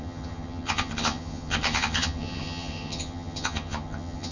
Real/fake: fake